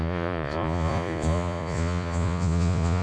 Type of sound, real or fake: fake